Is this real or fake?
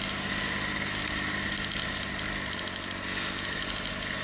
real